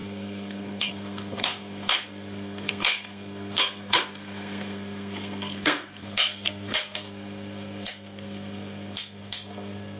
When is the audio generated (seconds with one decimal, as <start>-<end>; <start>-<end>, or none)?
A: 0.0-10.0